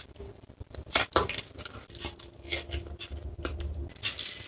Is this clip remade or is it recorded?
recorded